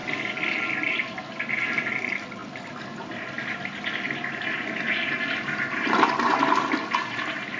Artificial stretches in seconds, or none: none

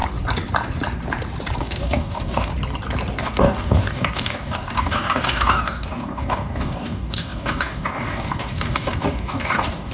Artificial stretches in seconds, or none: 1.6-2.5 (codec, DAC); 3.2-9.9